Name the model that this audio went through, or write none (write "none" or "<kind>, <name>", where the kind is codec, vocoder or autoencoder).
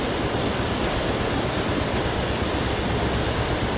none